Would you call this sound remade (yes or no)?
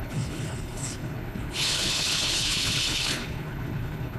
yes